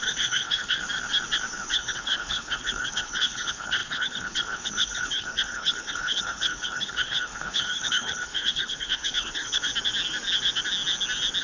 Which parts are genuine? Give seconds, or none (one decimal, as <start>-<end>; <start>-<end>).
0.8-1.5; 9.7-11.4